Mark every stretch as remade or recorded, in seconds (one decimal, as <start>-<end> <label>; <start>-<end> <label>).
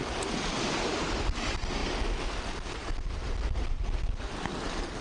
0.0-5.0 recorded